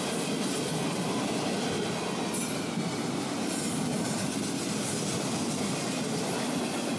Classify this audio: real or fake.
real